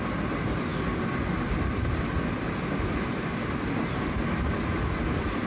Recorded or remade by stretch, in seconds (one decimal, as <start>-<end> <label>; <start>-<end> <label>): 0.0-5.5 recorded